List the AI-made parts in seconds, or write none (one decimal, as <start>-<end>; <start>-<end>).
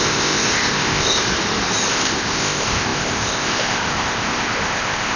0.0-1.3; 1.9-5.2